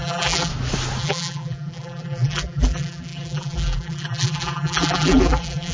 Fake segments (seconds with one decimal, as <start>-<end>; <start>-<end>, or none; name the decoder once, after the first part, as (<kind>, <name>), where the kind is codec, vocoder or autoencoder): 0.0-0.5 (vocoder, BigVGAN v2); 1.0-5.7